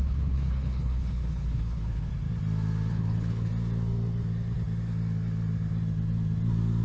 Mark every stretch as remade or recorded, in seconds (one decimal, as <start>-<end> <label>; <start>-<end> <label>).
0.0-2.1 remade; 2.1-2.9 recorded; 2.9-3.5 remade; 3.5-6.8 recorded